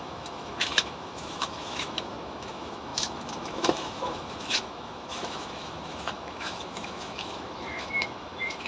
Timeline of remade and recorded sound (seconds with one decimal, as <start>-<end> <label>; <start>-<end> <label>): 0.0-8.7 remade